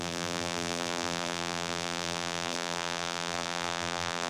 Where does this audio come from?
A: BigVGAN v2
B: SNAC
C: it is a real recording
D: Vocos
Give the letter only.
A